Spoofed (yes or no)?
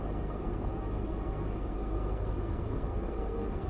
yes